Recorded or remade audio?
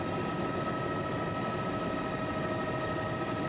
recorded